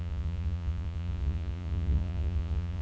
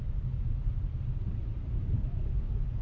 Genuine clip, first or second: second